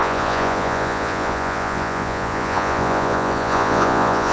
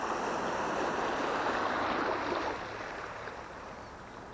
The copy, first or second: first